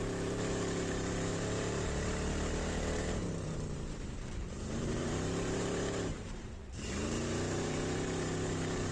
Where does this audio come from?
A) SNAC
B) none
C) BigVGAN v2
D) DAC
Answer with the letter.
C